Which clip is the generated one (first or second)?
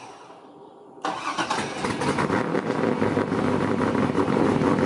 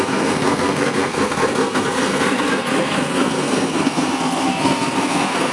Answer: second